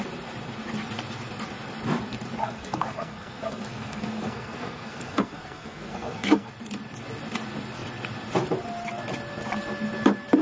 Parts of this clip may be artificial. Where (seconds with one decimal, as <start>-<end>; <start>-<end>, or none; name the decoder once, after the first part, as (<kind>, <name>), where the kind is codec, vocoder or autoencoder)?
2.4-6.5 (codec, SNAC)